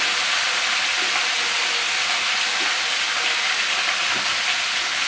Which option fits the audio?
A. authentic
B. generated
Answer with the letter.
A